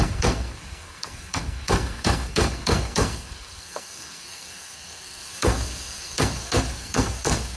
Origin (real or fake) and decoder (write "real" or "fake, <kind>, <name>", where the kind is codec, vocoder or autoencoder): fake, codec, SNAC